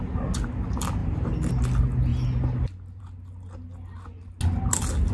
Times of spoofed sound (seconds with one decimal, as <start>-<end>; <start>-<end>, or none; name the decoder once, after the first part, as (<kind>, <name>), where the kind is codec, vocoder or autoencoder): 1.0-1.6 (vocoder, BigVGAN v2)

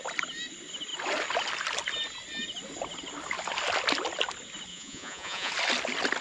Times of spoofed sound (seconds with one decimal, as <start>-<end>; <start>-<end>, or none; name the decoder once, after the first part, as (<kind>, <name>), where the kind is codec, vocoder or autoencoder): 4.7-5.5 (vocoder, Vocos)

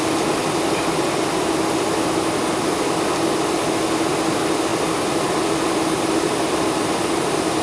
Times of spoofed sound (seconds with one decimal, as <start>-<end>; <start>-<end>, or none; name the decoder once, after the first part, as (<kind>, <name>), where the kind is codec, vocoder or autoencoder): none

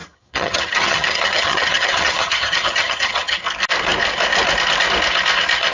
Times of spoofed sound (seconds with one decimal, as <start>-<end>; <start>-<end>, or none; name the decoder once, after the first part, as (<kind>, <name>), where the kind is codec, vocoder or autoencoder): 0.0-3.4 (vocoder, HiFi-GAN)

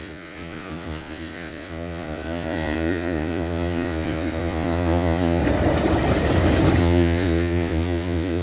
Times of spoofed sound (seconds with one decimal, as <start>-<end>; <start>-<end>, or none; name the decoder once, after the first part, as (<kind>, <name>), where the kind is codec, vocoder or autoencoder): 0.0-5.4 (vocoder, Vocos); 6.8-8.4

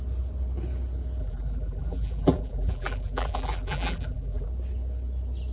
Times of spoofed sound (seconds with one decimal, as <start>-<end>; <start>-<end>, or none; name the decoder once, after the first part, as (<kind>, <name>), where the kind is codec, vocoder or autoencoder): 1.2-4.5 (vocoder, BigVGAN v2)

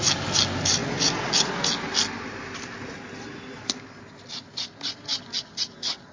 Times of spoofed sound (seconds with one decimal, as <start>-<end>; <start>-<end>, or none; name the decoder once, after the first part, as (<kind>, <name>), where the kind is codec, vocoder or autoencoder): none